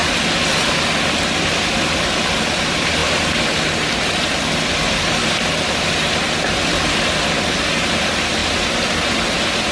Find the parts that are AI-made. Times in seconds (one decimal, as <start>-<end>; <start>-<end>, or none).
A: none